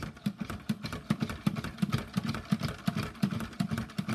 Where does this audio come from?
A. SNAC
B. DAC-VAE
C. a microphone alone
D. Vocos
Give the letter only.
C